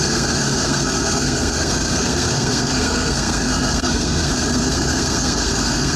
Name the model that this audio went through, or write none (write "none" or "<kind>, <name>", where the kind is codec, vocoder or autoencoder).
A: codec, SNAC